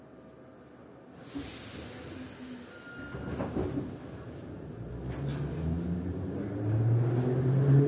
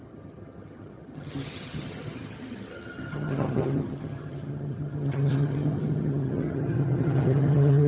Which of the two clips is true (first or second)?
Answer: first